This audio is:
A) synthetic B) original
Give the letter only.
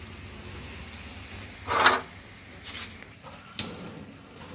B